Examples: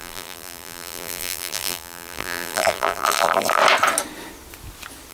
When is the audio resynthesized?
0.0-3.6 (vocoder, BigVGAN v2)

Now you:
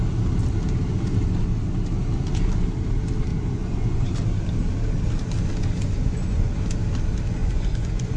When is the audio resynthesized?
3.3-4.1 (vocoder, Vocos); 5.6-6.6; 7.4-8.2